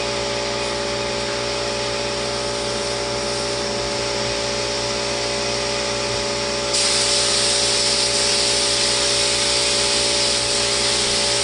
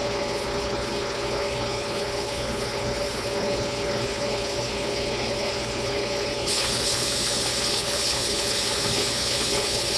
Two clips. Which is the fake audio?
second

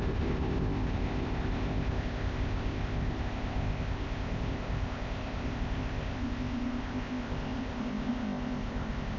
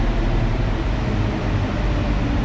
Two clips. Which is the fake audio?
first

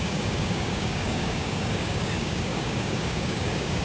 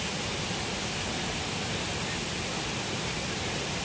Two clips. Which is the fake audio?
first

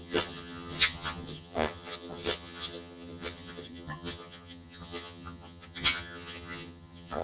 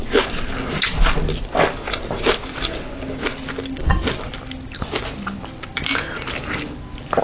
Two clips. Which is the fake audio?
first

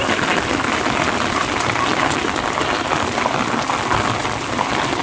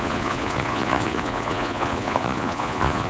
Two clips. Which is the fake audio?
second